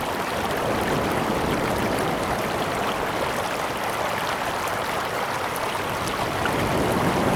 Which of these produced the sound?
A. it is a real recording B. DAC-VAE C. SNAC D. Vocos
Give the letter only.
A